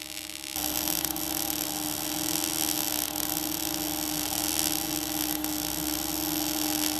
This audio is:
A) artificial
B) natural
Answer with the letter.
B